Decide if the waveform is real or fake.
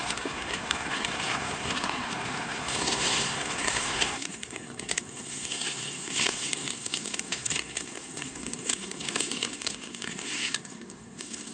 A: fake